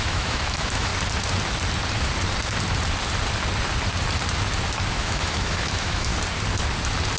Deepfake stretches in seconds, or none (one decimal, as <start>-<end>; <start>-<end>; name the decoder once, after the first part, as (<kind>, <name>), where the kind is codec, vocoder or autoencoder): 0.0-0.9 (autoencoder, DAC-VAE); 4.9-6.1